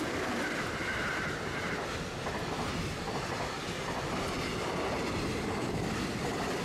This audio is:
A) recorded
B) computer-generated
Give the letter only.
A